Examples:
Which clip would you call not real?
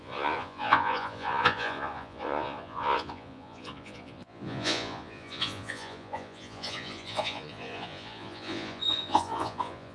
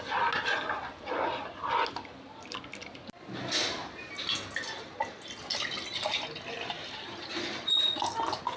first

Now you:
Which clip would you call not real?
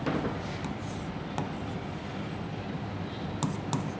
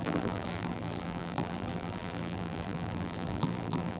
second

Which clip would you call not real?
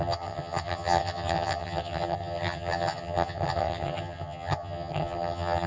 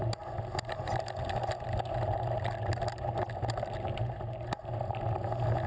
first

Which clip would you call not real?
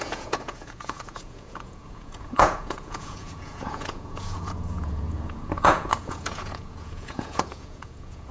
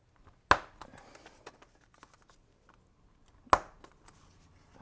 first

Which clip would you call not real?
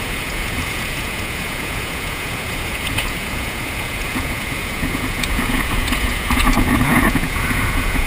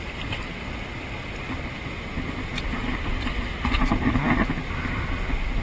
first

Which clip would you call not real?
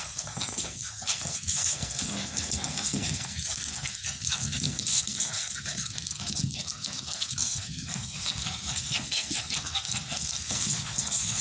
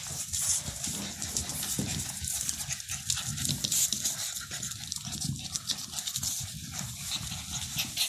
first